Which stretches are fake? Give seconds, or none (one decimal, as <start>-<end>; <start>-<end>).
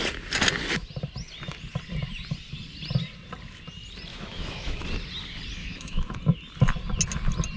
4.1-4.8; 5.6-6.2